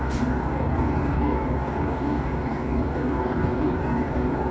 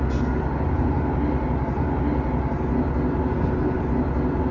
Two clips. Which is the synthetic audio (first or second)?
first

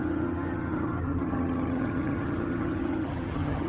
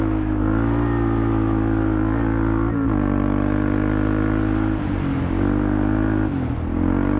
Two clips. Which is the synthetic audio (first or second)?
first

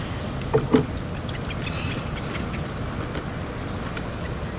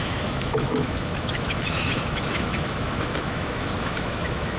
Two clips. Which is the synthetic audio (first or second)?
second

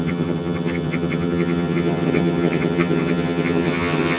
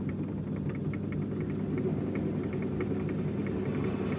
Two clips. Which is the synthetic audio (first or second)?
first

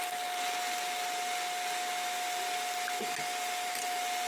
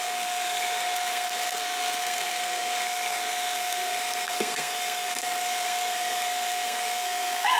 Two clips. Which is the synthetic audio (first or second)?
second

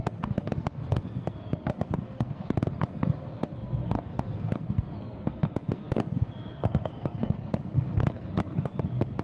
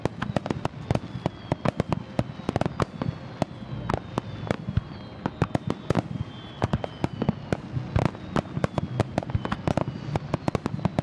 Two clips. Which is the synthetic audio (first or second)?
first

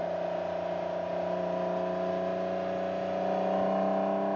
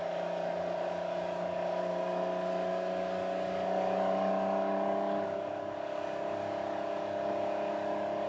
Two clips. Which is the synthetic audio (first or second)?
second